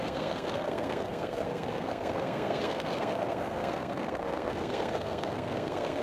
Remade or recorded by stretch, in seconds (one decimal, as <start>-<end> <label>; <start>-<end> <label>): 0.0-6.0 remade